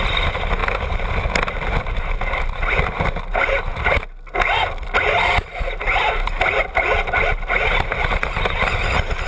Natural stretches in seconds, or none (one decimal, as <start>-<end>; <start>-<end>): 0.0-9.3

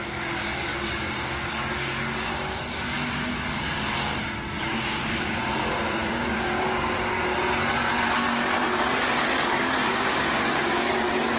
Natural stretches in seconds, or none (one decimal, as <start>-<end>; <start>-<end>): 0.0-0.7; 2.3-4.6; 5.4-6.0; 7.2-9.9; 10.9-11.4

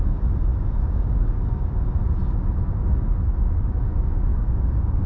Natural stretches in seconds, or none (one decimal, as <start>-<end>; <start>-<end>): 0.0-0.5; 1.8-4.3

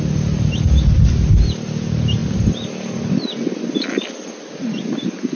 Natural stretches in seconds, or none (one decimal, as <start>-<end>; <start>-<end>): 0.0-5.4

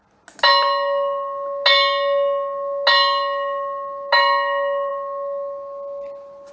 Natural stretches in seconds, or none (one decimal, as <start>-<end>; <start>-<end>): 0.0-6.5